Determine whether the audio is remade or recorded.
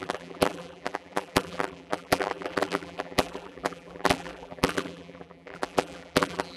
remade